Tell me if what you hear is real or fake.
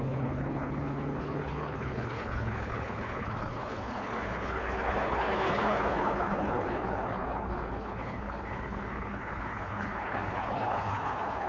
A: fake